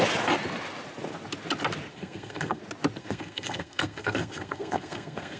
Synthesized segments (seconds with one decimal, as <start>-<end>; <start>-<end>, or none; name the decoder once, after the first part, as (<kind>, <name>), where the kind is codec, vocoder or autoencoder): 1.9-2.6 (codec, SNAC); 3.0-5.4